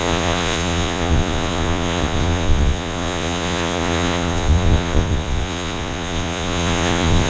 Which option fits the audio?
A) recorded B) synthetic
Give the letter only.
B